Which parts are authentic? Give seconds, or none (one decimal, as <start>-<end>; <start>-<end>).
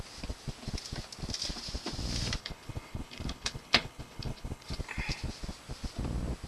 0.0-2.4; 4.8-6.5